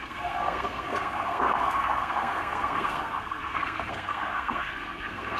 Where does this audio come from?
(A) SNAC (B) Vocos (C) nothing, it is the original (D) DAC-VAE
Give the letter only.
A